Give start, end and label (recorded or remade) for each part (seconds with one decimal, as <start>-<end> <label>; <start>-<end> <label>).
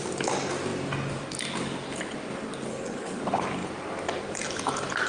0.0-2.7 recorded; 2.7-3.2 remade; 3.2-5.1 recorded